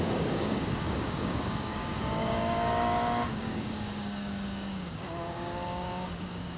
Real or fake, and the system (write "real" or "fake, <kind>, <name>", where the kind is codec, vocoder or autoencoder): fake, codec, DAC